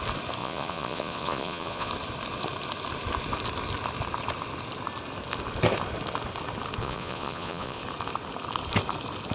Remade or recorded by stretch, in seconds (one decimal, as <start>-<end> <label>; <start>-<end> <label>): 0.0-0.4 recorded; 0.4-1.9 remade; 1.9-6.8 recorded; 6.8-7.8 remade; 7.8-9.3 recorded